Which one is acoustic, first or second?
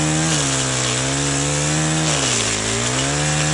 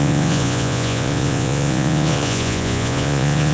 first